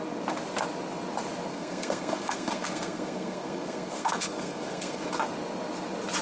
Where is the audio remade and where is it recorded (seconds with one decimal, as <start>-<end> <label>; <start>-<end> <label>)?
0.0-1.5 recorded; 1.5-5.2 remade; 5.2-6.2 recorded